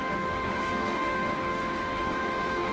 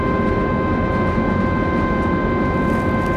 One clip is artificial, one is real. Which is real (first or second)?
second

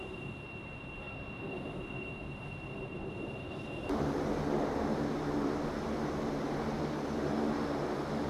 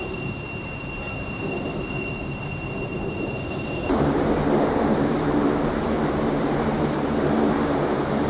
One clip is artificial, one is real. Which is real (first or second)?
first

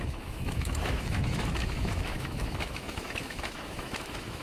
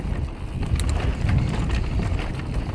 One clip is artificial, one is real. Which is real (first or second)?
second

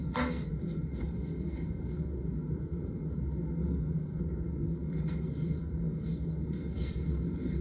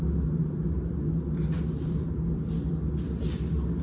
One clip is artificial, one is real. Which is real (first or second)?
second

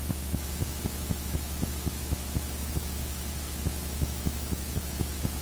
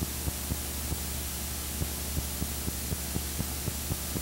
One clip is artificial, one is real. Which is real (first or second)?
second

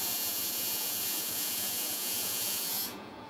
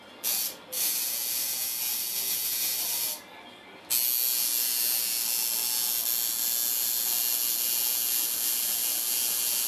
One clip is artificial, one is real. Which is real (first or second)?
second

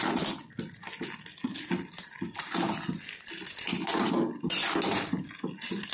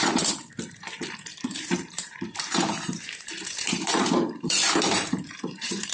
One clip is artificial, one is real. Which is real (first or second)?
first